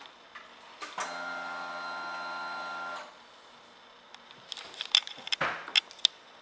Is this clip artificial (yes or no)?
no